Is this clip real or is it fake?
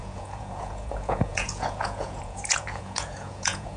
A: fake